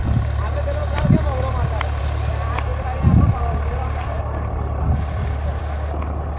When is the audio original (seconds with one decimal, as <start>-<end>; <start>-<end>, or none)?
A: 0.0-6.4